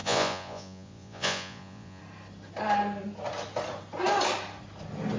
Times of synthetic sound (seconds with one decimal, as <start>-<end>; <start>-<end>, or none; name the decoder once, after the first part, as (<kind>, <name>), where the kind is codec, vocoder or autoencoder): 0.0-2.0 (vocoder, Vocos)